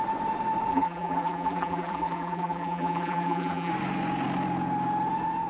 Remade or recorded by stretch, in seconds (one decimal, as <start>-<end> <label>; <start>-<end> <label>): 0.0-0.7 recorded; 0.7-3.7 remade; 3.7-5.5 recorded